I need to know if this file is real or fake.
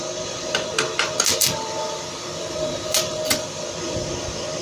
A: fake